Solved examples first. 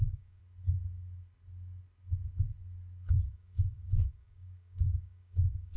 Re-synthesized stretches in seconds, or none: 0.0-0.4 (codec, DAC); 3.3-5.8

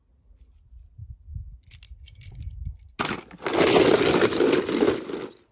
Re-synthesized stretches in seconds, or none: none

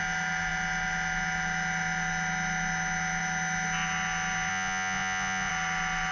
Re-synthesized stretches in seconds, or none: 4.5-5.5 (vocoder, Vocos)

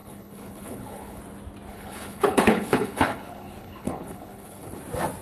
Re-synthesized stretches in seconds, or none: 0.0-1.2 (codec, HILCodec); 1.7-4.8